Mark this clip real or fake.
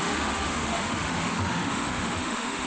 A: fake